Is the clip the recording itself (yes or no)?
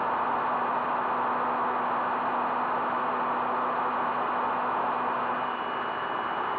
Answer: yes